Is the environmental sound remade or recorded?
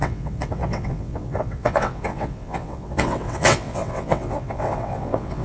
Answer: remade